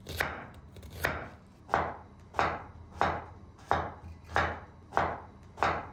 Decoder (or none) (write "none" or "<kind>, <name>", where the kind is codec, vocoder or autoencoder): none